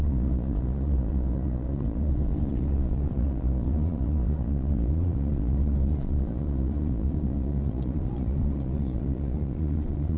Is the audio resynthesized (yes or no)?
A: yes